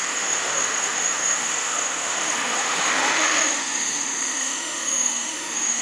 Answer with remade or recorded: remade